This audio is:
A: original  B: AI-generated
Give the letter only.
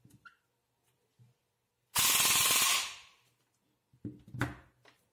A